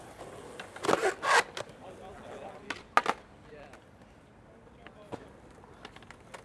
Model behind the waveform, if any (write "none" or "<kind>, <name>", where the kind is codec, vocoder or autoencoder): none